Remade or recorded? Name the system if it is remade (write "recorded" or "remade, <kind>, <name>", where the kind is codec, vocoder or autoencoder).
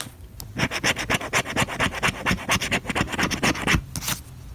recorded